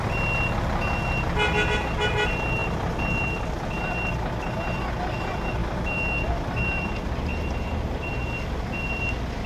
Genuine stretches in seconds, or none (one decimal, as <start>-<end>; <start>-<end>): 0.0-5.6; 6.2-9.5